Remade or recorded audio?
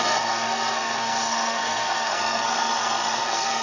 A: remade